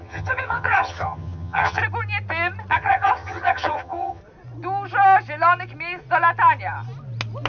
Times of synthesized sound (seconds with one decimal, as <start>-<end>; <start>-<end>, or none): 0.0-1.8; 2.7-4.2